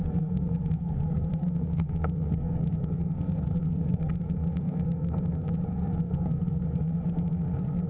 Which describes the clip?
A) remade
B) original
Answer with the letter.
A